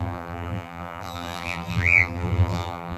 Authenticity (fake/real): fake